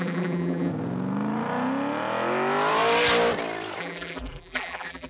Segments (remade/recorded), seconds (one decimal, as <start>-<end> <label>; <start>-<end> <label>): 0.0-0.7 remade; 0.7-3.8 recorded; 3.8-5.1 remade